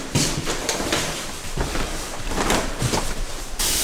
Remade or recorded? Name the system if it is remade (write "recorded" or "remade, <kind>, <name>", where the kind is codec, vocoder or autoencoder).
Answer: remade, vocoder, BigVGAN v2